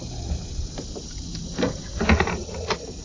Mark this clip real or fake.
real